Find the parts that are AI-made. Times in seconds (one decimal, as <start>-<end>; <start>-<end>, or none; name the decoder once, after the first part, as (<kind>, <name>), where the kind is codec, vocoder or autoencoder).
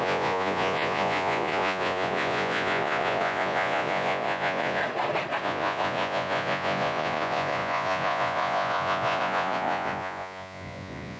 0.0-4.8 (vocoder, Vocos); 5.4-11.2